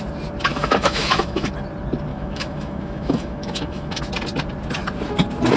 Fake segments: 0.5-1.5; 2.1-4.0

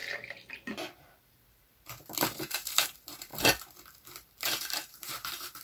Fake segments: 0.0-3.3; 4.0-5.6

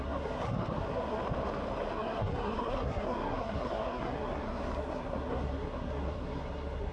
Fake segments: 0.0-1.2; 1.9-6.9

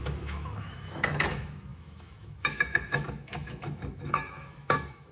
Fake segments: 0.0-5.1